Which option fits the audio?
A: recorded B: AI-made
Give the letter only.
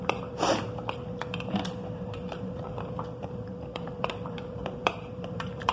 B